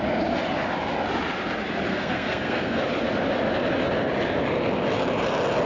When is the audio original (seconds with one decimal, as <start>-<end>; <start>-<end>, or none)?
0.0-1.9; 2.8-5.7